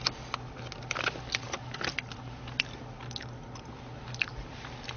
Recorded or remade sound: recorded